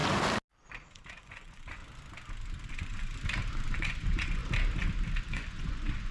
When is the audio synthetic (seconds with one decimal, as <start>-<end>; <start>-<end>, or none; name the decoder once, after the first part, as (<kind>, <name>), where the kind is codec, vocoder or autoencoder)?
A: 1.2-1.8 (vocoder, Vocos); 2.7-3.1; 3.7-4.4; 5.3-6.1